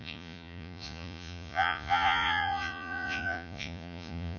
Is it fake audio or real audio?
fake